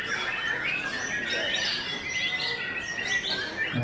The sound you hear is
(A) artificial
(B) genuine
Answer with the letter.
B